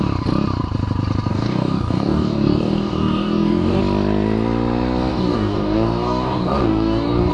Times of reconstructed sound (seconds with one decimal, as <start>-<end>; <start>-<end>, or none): 1.3-3.8; 5.1-7.3